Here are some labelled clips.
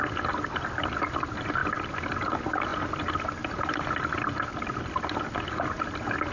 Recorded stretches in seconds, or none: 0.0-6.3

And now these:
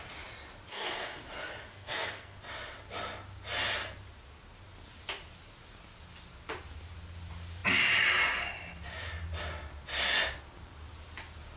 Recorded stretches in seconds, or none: 0.0-0.7; 1.2-1.7; 2.4-11.6